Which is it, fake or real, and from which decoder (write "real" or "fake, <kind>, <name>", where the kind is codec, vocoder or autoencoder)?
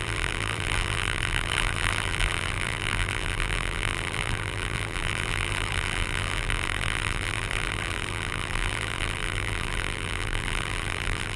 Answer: fake, vocoder, BigVGAN v2